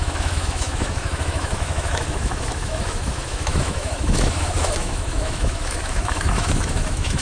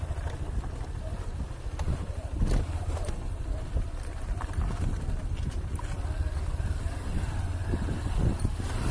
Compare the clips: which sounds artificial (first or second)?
first